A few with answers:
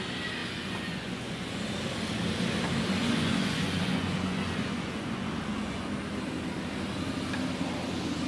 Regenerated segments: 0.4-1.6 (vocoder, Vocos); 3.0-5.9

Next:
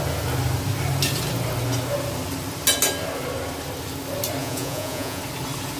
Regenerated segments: 4.4-5.2 (vocoder, Vocos)

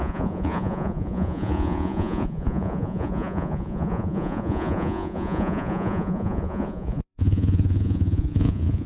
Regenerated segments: 0.0-8.9 (vocoder, Vocos)

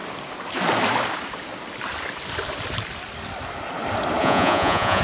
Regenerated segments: 4.2-5.0 (vocoder, Vocos)

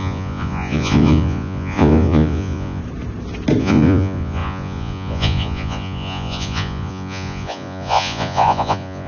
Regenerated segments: 0.0-2.8 (vocoder, Vocos); 3.6-9.1

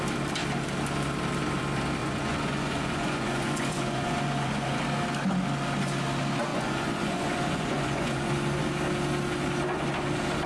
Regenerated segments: 2.0-4.8 (vocoder, Vocos); 6.5-8.6

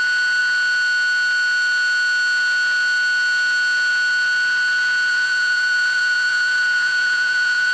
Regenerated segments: 5.1-7.7 (vocoder, Vocos)